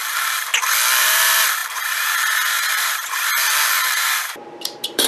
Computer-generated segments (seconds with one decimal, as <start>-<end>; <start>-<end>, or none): 0.0-0.5; 1.0-5.1